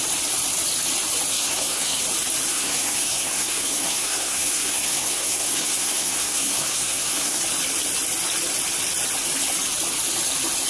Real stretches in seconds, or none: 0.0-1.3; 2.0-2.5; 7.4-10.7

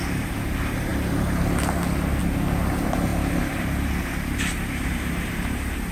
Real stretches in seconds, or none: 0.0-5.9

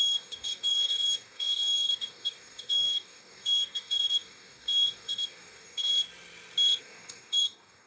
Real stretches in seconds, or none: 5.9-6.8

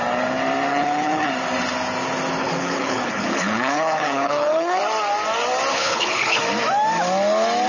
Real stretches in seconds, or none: 0.0-0.7; 1.3-2.4; 4.8-5.7; 6.4-7.7